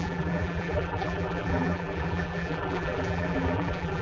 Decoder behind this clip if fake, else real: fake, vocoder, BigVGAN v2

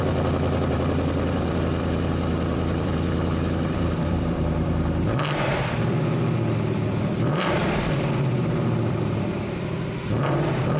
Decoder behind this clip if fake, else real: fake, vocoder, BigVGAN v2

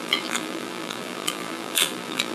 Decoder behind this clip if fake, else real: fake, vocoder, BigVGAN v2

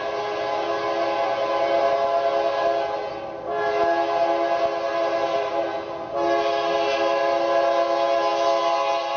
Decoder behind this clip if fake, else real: real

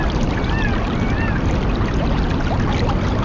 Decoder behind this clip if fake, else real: real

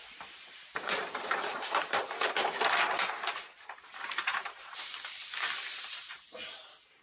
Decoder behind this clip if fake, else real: fake, vocoder, BigVGAN v2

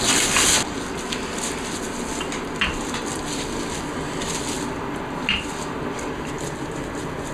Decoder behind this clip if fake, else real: real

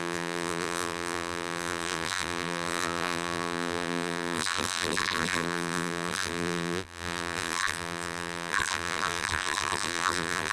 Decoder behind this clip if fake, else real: fake, vocoder, BigVGAN v2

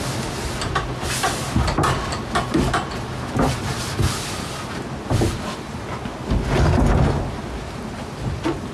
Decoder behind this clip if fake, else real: real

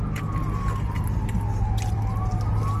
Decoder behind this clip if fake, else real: real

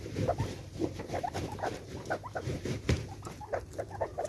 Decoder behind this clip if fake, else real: fake, vocoder, BigVGAN v2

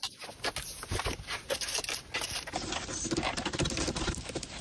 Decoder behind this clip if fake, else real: real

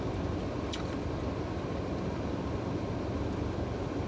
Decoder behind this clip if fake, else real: real